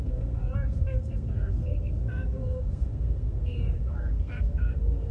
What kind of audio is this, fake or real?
fake